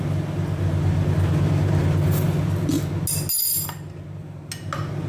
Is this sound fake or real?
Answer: real